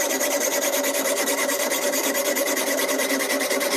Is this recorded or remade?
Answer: remade